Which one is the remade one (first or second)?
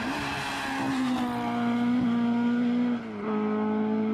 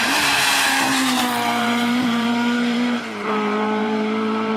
second